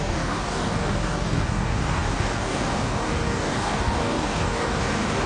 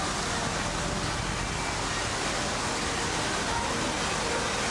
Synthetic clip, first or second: first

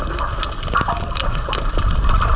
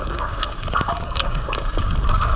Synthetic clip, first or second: second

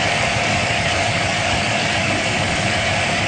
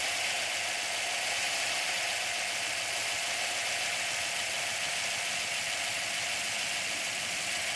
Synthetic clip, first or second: first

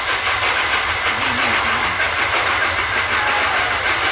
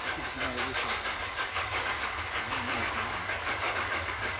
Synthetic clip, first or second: second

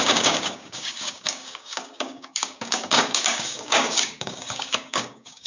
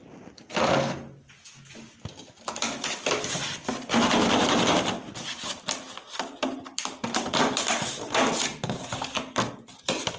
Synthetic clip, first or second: first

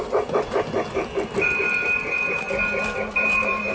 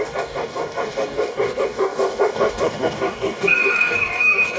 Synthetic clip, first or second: second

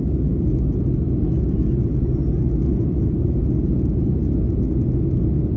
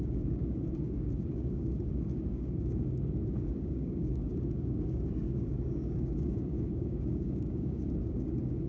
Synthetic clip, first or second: second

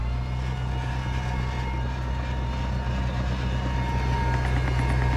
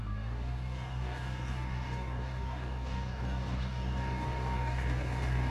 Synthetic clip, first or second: second